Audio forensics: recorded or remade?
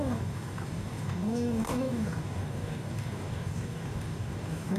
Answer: remade